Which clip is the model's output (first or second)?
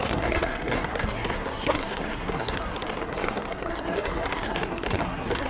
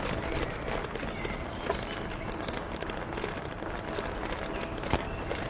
first